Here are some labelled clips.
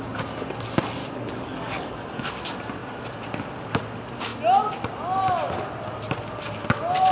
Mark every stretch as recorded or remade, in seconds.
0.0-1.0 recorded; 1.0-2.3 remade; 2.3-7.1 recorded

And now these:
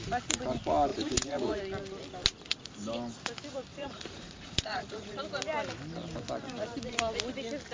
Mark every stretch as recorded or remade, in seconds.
0.0-0.9 recorded; 0.9-1.6 remade; 1.6-3.7 recorded; 3.7-5.2 remade; 5.2-7.7 recorded

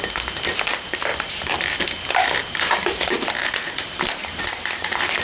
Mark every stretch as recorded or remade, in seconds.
0.0-1.1 recorded; 1.1-1.8 remade; 1.8-2.4 recorded; 2.4-5.2 remade

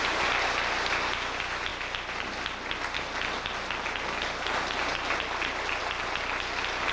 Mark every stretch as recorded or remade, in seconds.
0.0-6.9 recorded

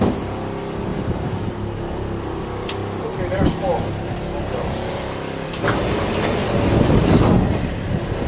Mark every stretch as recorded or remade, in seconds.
0.0-0.9 recorded; 0.9-1.5 remade; 1.5-2.8 recorded; 2.8-5.5 remade; 5.5-6.4 recorded; 6.4-8.3 remade

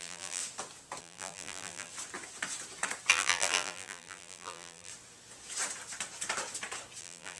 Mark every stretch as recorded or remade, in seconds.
0.0-0.4 remade; 0.4-1.0 recorded; 1.0-1.9 remade; 1.9-3.1 recorded; 3.1-4.9 remade; 4.9-7.0 recorded; 7.0-7.4 remade

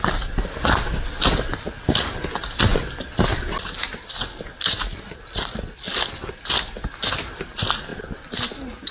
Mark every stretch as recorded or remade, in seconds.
0.0-8.9 recorded